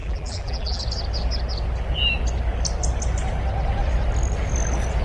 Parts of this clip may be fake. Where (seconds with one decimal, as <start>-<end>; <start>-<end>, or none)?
0.0-0.8